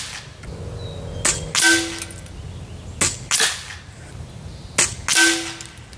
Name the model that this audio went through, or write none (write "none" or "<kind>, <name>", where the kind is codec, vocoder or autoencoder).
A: none